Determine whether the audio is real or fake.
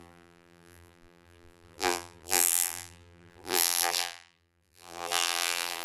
fake